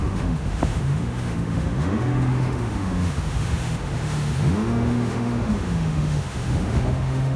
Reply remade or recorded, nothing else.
remade